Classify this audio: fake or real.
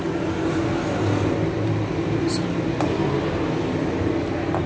real